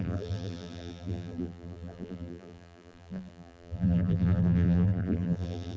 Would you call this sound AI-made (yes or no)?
yes